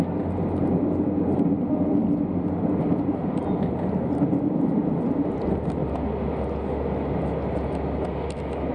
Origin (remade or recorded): recorded